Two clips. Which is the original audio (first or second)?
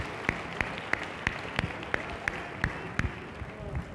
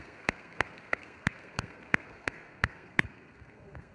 first